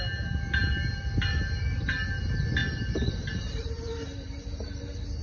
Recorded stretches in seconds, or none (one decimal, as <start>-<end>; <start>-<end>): 0.0-5.2